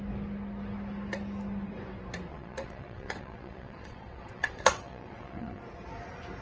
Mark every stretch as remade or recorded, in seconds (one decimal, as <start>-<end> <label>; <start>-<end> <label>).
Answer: 0.0-2.3 recorded; 2.3-5.6 remade; 5.6-6.4 recorded